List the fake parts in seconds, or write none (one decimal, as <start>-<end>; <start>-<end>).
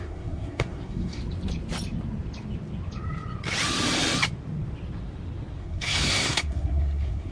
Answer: 0.0-1.2; 5.6-7.3